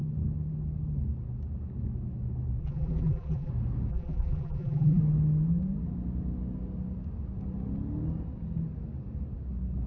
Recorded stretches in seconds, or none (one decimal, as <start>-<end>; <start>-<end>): 0.0-2.6; 3.5-3.9; 5.0-9.9

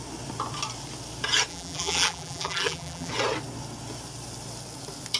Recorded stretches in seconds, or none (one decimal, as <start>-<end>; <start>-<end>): 0.0-1.5; 3.1-5.2

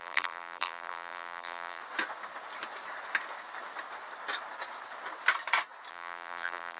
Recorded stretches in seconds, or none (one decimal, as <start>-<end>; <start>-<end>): 1.8-5.9

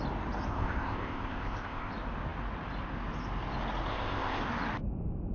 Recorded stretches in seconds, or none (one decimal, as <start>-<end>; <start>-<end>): 0.0-0.5; 1.9-3.9; 4.4-5.3

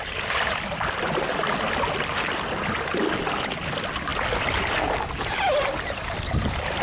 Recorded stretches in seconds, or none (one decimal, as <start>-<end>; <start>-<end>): 0.0-6.8

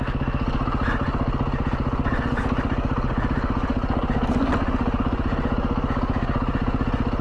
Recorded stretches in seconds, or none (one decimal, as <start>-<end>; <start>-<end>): 0.0-7.2

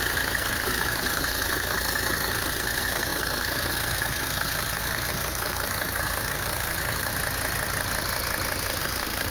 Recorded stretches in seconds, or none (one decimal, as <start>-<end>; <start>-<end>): 7.1-8.8

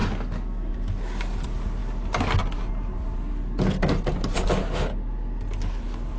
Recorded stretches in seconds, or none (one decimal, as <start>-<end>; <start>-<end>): 0.0-6.2